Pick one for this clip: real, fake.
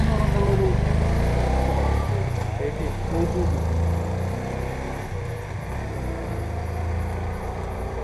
real